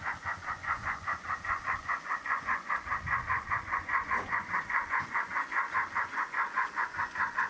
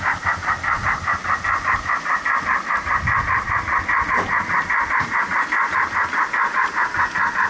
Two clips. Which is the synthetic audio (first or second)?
first